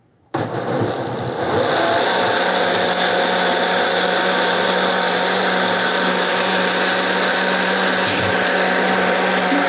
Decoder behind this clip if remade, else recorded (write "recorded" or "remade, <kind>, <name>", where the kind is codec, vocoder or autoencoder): recorded